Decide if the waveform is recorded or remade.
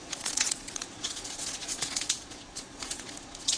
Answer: remade